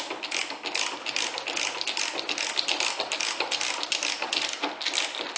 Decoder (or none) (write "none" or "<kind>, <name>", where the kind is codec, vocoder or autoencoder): none